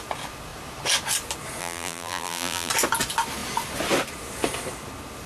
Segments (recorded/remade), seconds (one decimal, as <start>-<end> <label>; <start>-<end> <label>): 0.0-1.6 recorded; 1.6-2.7 remade; 2.7-5.3 recorded